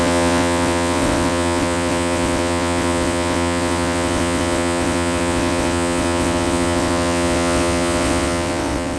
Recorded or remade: remade